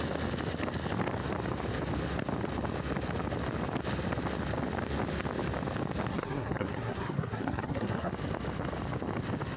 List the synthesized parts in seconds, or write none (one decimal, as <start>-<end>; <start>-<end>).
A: 6.1-8.1